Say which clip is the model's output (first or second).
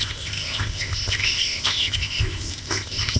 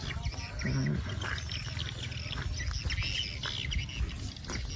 first